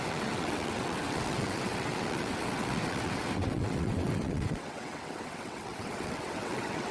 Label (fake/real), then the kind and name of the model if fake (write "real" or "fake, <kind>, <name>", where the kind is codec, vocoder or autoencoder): fake, vocoder, WaveNeXt